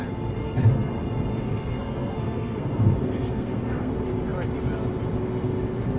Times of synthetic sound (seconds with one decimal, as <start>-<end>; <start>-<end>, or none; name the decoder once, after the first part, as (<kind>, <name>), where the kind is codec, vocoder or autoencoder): 0.4-0.9 (codec, SNAC); 1.3-3.9